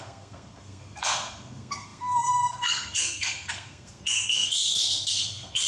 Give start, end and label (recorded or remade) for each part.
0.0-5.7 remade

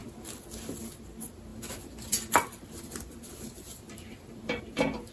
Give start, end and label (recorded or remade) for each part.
0.0-1.5 recorded; 1.5-4.6 remade; 4.6-5.1 recorded

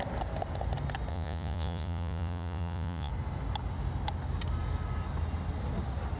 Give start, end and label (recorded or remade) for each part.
0.0-1.1 recorded; 1.1-3.1 remade; 3.1-6.2 recorded